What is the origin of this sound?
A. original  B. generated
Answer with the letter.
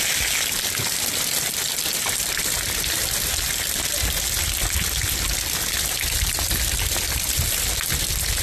A